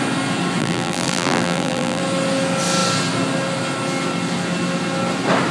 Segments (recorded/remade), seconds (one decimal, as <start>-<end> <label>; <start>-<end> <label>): 0.0-0.6 recorded; 0.6-2.0 remade; 2.0-5.5 recorded